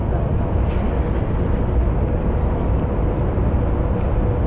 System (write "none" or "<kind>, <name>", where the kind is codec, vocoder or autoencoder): none